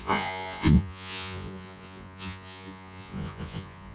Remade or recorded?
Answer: remade